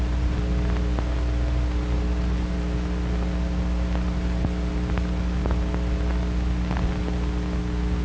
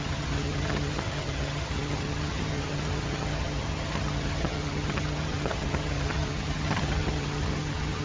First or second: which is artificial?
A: second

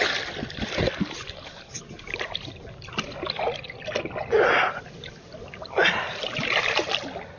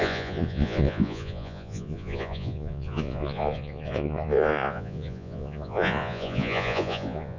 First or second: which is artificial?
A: second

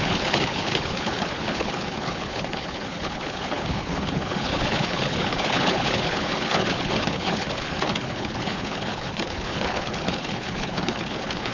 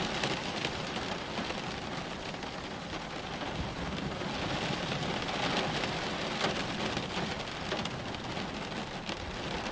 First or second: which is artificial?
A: first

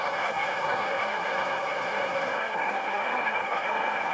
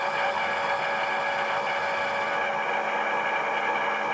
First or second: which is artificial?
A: first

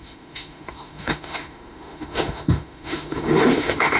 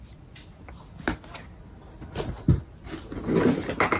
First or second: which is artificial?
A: first